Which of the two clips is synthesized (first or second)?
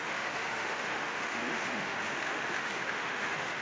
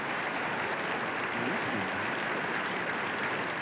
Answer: first